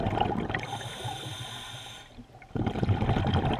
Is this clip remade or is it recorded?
remade